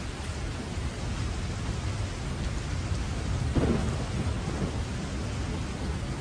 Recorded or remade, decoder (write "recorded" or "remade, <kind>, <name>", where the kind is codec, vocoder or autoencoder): recorded